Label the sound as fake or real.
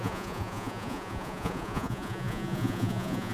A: fake